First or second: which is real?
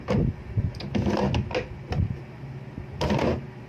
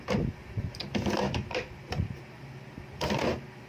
first